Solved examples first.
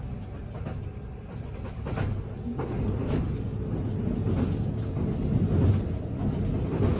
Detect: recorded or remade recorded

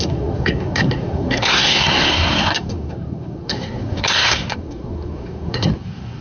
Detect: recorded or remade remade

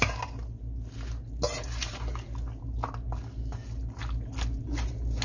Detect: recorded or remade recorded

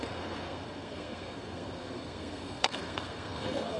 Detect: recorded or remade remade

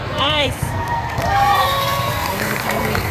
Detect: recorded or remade remade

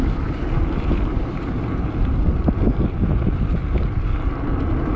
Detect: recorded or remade recorded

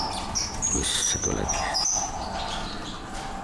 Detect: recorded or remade recorded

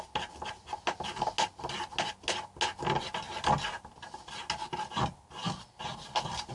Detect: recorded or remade recorded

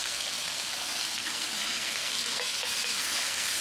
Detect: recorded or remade remade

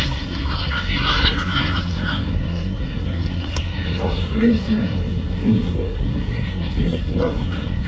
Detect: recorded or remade remade